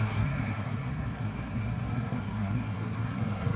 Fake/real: fake